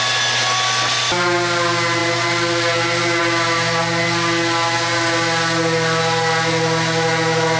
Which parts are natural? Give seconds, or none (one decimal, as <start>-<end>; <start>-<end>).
0.0-7.6